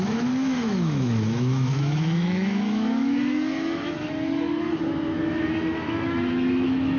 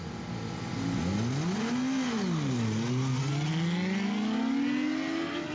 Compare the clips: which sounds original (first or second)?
second